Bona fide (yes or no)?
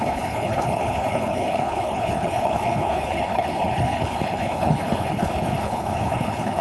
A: no